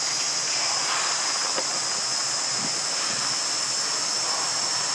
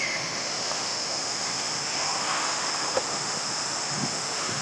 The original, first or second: first